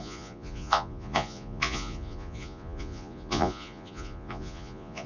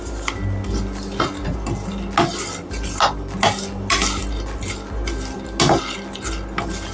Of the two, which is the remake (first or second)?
first